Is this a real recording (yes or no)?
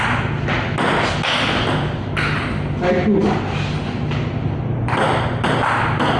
yes